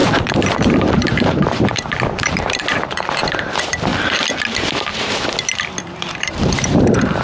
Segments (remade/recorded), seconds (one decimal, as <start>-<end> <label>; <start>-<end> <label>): 0.0-0.6 recorded; 0.6-3.9 remade; 3.9-5.8 recorded; 5.8-7.2 remade